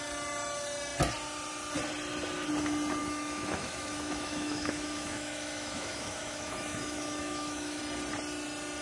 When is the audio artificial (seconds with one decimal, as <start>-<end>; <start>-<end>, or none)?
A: 3.0-7.8